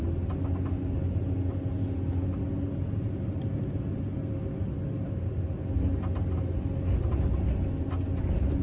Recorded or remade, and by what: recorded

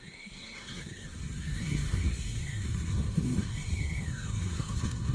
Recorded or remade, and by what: remade, codec, SNAC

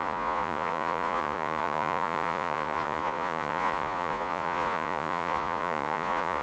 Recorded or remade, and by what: remade, vocoder, Vocos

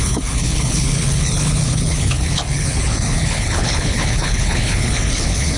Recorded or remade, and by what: remade, codec, HILCodec